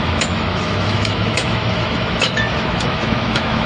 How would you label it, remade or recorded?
remade